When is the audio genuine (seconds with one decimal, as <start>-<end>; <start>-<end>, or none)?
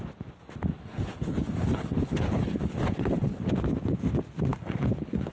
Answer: 0.0-0.7; 3.5-4.5